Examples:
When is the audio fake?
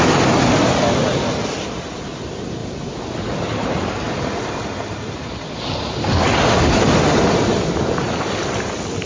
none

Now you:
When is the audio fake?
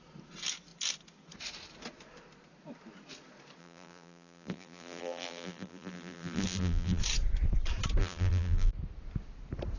3.6-7.0 (vocoder, BigVGAN v2); 8.0-8.7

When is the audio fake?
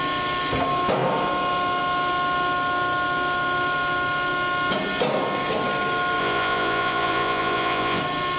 6.2-8.0 (vocoder, Vocos)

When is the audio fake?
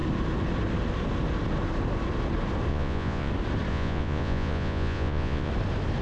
2.7-3.3 (vocoder, Vocos); 3.7-5.5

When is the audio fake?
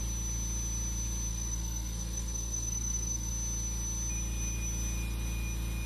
1.3-3.3 (codec, SNAC)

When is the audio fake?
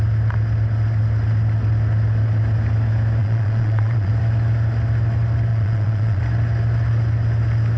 3.2-4.1 (vocoder, Vocos); 5.5-6.2